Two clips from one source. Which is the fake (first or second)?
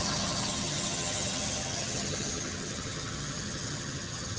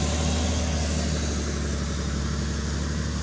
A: first